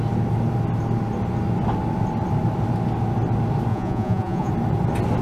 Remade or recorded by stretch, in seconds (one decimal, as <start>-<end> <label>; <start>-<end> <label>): 0.0-3.7 recorded; 3.7-4.5 remade; 4.5-5.2 recorded